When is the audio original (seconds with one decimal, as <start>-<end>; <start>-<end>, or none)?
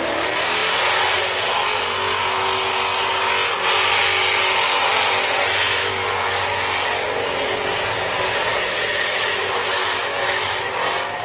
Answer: 0.0-5.8; 6.6-8.5; 9.4-9.8; 10.7-11.2